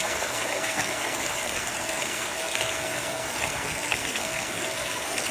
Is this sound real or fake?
fake